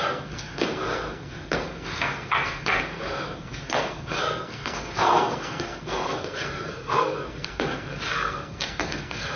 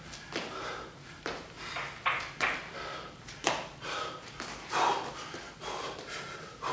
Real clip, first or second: second